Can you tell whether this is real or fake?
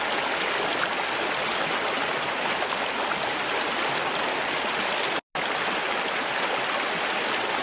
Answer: real